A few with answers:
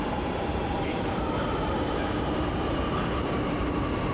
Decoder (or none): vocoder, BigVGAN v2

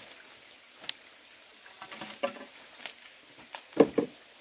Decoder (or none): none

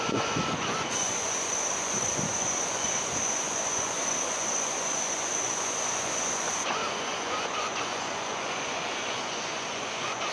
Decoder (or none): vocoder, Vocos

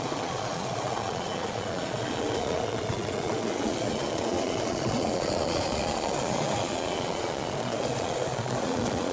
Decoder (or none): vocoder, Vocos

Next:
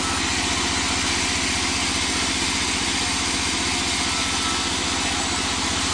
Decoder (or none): none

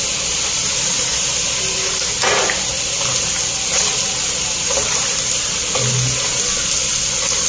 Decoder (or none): none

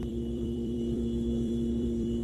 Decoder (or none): vocoder, BigVGAN v2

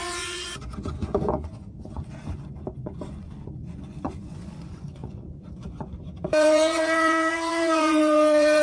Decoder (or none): vocoder, Vocos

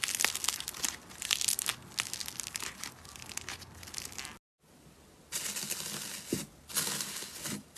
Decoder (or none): none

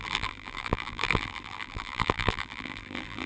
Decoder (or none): vocoder, BigVGAN v2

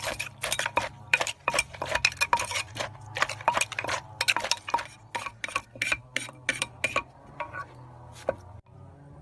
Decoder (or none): vocoder, BigVGAN v2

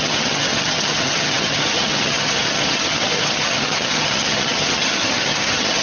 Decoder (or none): vocoder, HiFi-GAN